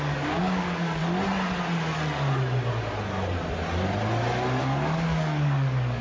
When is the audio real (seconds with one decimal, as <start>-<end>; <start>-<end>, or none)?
1.0-4.6